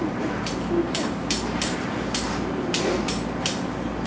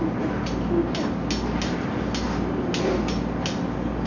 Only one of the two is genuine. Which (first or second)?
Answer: second